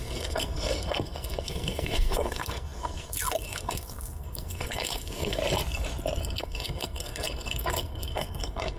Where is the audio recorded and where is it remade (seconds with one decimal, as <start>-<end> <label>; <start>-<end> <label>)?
0.0-5.4 remade; 5.4-6.4 recorded; 6.4-8.8 remade